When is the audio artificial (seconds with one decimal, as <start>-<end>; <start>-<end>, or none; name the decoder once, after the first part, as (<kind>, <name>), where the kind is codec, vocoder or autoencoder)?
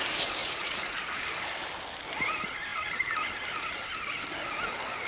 0.4-1.2 (vocoder, Vocos)